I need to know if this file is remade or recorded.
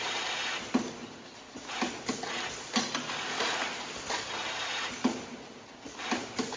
recorded